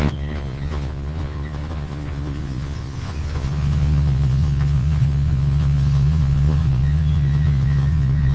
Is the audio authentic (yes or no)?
no